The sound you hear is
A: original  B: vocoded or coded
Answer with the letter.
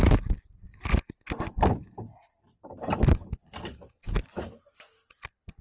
A